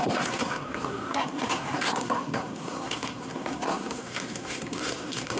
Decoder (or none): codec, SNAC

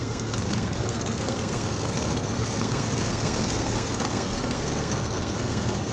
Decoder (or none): codec, SNAC